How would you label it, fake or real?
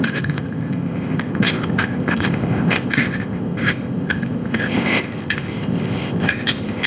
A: fake